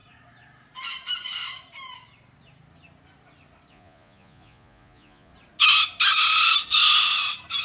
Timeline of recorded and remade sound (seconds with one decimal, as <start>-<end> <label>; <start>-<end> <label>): 0.0-3.7 recorded; 3.7-5.3 remade; 5.3-7.6 recorded